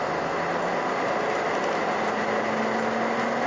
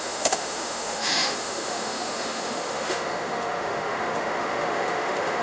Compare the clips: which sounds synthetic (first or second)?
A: second